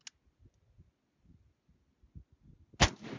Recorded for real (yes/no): yes